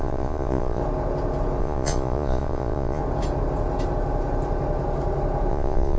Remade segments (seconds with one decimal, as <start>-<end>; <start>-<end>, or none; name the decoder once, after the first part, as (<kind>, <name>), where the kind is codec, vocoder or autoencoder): 0.0-0.8 (vocoder, Vocos); 1.6-3.0; 5.5-6.0